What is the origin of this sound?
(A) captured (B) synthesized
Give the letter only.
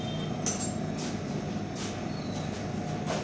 A